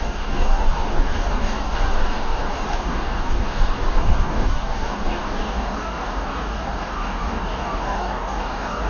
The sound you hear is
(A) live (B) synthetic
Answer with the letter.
B